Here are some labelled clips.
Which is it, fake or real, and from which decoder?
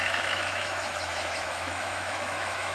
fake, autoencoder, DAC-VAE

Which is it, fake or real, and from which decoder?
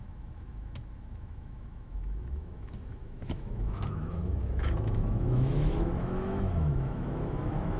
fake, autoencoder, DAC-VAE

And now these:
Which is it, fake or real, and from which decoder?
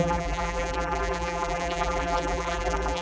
fake, vocoder, BigVGAN v2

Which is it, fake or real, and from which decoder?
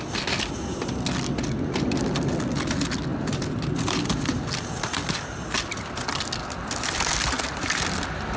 real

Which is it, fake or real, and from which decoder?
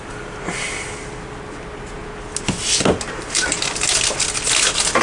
real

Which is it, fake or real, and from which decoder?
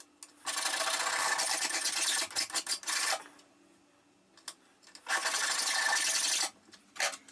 real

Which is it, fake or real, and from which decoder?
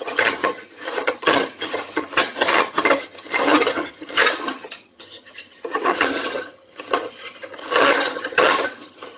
fake, vocoder, HiFi-GAN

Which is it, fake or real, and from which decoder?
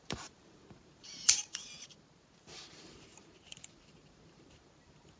fake, vocoder, BigVGAN v2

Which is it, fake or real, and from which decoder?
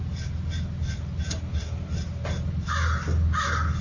real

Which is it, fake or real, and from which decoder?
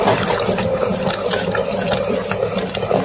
real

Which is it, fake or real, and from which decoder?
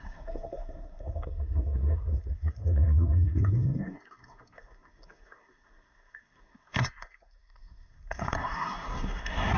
fake, codec, SNAC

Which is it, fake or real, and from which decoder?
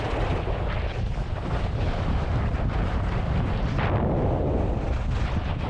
real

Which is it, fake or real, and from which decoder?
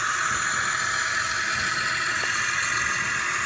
real